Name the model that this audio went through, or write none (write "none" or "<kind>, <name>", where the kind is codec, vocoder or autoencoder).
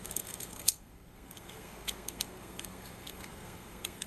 codec, SNAC